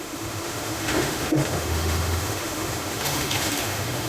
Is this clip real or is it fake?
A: fake